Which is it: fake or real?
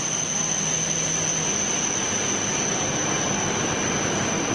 real